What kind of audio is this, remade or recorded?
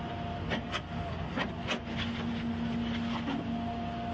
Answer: recorded